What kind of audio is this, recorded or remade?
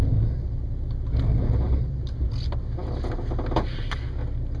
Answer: recorded